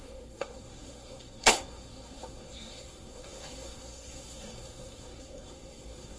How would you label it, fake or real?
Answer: fake